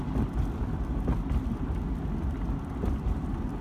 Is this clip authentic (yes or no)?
yes